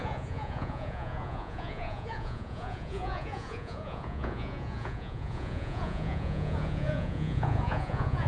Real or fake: fake